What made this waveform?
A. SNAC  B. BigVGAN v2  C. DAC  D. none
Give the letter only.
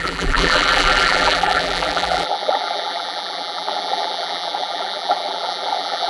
B